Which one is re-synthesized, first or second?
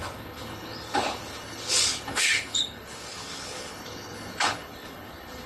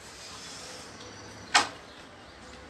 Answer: first